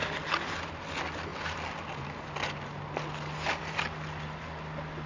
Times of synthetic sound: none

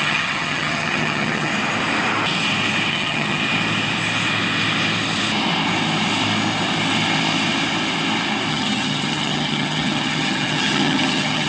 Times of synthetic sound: 0.0-1.5 (vocoder, HiFi-GAN); 2.9-3.4; 8.5-11.5